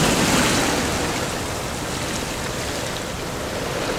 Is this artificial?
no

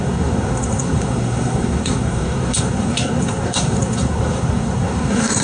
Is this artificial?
yes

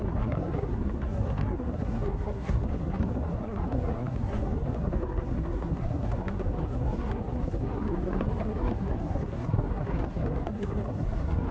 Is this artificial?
yes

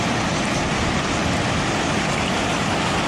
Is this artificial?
no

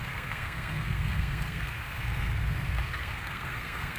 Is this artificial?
yes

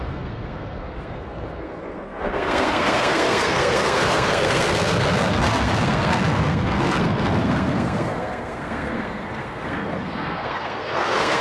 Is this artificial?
yes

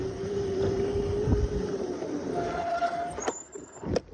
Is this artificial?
no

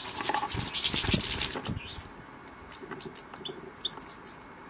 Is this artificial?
no